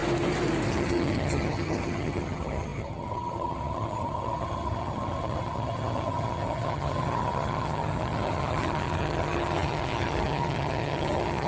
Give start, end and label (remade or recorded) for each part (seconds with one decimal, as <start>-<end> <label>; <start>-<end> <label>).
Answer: 0.0-0.7 recorded; 0.7-11.5 remade